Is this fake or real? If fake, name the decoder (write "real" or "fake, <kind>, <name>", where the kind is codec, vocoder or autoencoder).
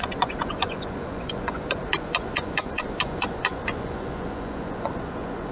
fake, vocoder, Vocos